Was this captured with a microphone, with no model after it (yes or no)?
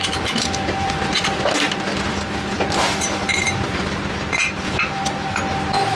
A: no